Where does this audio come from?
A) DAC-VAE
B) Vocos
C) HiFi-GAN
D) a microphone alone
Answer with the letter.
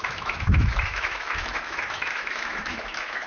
A